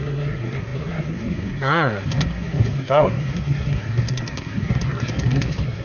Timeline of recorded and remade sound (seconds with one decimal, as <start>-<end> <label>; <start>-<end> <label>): 0.0-5.8 remade